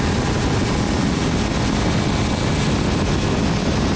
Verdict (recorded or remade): recorded